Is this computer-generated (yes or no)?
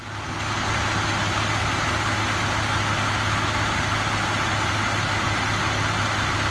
no